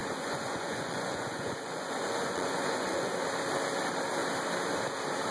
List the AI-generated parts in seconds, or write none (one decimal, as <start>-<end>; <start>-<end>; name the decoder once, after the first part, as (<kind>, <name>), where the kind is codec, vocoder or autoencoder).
0.0-3.1 (vocoder, Vocos)

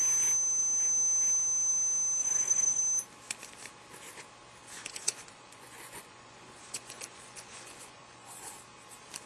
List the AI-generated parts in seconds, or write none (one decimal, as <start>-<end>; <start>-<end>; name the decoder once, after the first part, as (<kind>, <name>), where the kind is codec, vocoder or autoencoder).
2.2-2.8 (vocoder, Vocos); 4.6-8.5

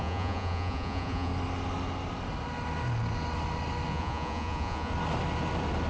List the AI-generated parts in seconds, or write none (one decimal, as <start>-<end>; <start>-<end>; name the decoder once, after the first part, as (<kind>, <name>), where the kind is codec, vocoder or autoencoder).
0.0-1.3 (vocoder, Vocos); 3.9-4.9

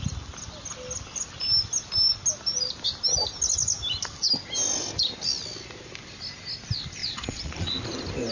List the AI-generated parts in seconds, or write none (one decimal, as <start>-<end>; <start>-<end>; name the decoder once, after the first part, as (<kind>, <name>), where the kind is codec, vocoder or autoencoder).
7.0-7.7 (vocoder, Vocos)

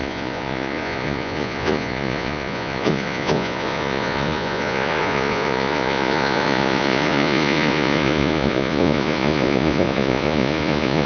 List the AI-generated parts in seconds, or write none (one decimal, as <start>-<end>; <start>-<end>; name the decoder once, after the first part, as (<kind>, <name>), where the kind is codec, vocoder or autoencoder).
0.0-11.1 (vocoder, Vocos)